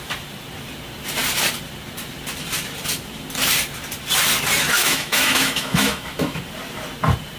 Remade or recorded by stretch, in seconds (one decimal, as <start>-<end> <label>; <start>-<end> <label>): 0.0-4.8 recorded; 4.8-6.4 remade; 6.4-7.4 recorded